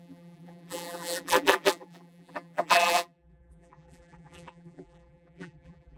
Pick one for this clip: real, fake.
fake